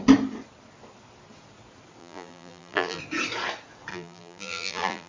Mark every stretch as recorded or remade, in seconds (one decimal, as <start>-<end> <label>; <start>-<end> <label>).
0.0-2.0 recorded; 2.0-3.0 remade; 3.0-3.9 recorded; 3.9-5.1 remade

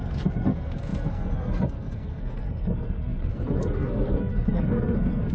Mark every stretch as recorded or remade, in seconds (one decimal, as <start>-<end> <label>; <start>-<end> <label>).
0.0-5.3 remade

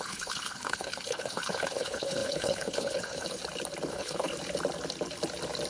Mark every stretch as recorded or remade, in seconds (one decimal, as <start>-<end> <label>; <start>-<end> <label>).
0.0-3.4 remade; 3.4-3.9 recorded; 3.9-4.3 remade; 4.3-5.7 recorded

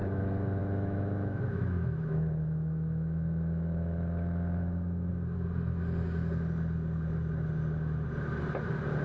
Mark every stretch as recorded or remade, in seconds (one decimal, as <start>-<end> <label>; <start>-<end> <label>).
0.0-0.6 recorded; 0.6-5.1 remade; 5.1-9.0 recorded

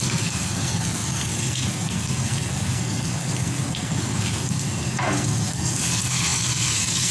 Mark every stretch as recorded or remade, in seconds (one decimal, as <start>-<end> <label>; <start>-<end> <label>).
0.0-7.1 remade

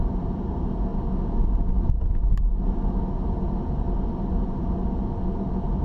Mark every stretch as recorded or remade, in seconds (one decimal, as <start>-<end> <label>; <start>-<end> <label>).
0.0-0.9 remade; 0.9-4.4 recorded; 4.4-5.8 remade

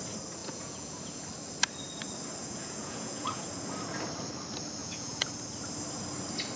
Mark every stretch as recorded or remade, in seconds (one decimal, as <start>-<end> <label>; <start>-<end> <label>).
0.0-0.4 recorded; 0.4-1.0 remade; 1.0-2.4 recorded; 2.4-3.4 remade; 3.4-4.8 recorded; 4.8-5.3 remade; 5.3-6.6 recorded